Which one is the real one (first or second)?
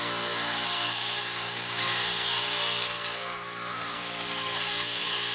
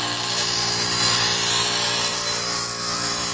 second